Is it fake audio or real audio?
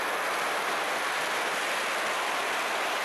real